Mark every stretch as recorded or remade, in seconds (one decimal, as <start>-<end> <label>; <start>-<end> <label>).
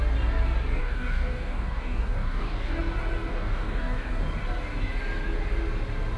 0.0-0.8 recorded; 0.8-2.8 remade; 2.8-3.3 recorded; 3.3-4.1 remade; 4.1-6.2 recorded